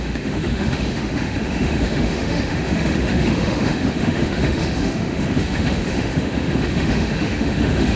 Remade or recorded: remade